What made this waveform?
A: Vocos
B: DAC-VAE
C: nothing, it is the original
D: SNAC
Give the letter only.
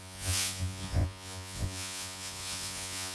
A